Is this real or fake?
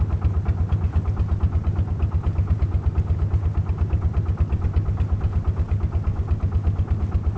real